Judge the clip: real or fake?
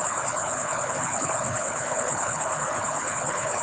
fake